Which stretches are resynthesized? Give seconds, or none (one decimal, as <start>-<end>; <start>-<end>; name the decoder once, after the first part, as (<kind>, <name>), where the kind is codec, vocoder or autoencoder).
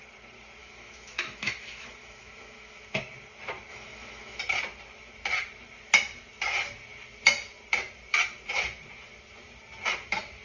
0.6-3.0 (autoencoder, DAC-VAE); 3.7-4.4